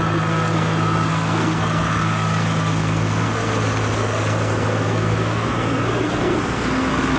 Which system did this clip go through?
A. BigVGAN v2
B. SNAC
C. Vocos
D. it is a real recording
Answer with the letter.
B